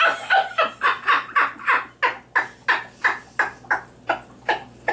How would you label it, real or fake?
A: real